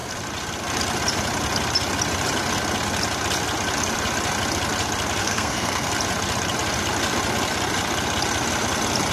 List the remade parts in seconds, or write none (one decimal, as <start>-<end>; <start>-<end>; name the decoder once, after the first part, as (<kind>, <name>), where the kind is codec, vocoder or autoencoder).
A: 5.2-5.9 (codec, SNAC)